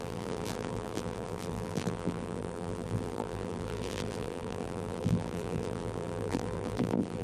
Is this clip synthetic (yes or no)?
yes